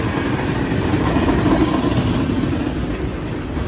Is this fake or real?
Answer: real